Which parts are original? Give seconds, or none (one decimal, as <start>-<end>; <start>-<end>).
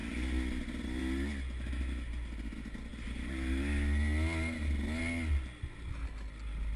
0.0-6.8